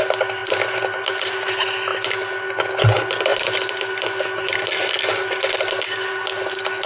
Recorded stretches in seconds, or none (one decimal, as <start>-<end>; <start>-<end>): 0.0-6.9